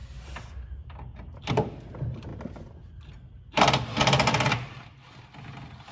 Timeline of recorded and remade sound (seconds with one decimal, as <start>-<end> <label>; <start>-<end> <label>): 0.0-5.9 recorded